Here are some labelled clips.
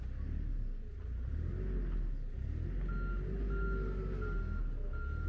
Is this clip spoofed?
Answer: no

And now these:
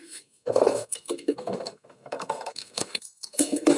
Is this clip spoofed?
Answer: yes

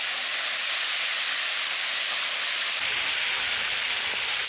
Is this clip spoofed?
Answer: no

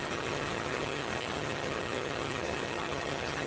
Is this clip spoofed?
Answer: yes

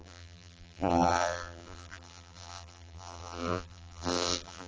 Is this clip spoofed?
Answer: yes